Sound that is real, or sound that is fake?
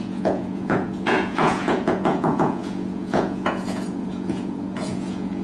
fake